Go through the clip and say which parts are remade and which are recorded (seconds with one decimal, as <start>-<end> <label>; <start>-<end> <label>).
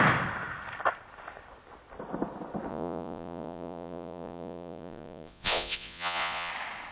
0.0-2.7 recorded; 2.7-6.5 remade; 6.5-6.9 recorded